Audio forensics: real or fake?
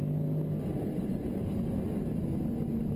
real